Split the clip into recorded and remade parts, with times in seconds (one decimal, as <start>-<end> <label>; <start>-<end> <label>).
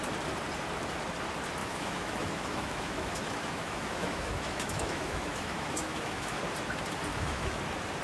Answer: 0.0-1.6 recorded; 1.6-6.4 remade; 6.4-7.1 recorded; 7.1-7.6 remade; 7.6-8.0 recorded